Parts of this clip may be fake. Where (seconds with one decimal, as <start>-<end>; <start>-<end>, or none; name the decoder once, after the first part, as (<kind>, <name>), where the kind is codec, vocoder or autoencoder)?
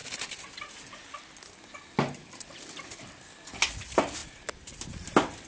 none